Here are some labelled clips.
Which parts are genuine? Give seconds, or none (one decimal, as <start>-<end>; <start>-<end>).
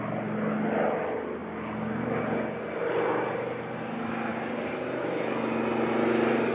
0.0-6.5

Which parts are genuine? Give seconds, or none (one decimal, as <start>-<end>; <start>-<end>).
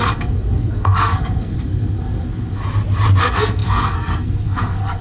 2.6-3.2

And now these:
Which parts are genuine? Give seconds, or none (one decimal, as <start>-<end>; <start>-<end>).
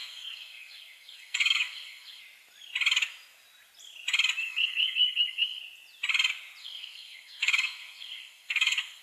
2.2-4.4; 5.6-6.6